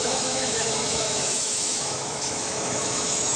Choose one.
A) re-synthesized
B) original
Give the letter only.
A